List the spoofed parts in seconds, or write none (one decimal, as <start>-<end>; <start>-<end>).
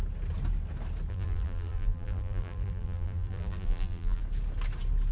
1.1-4.2